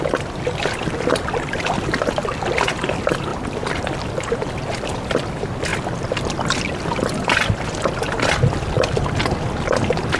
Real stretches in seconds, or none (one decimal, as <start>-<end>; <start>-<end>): 0.0-3.3; 4.1-10.2